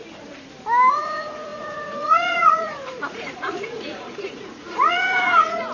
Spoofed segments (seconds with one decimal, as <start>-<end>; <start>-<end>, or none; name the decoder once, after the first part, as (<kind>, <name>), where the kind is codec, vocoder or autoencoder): 0.9-5.7 (vocoder, Vocos)